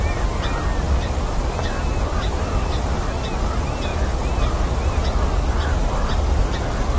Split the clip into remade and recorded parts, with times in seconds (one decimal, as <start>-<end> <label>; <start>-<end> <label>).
0.0-7.0 recorded